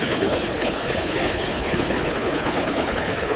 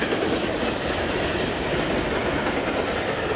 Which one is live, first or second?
second